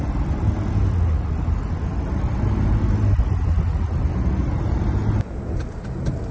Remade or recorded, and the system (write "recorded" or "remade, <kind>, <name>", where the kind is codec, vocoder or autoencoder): recorded